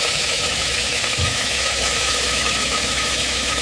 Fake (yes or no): yes